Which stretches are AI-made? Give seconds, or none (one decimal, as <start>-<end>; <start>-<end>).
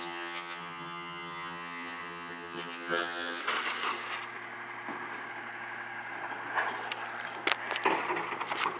0.0-3.4